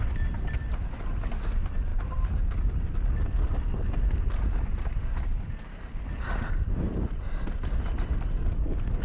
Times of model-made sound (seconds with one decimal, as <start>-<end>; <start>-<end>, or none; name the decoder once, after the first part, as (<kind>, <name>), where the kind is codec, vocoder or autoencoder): none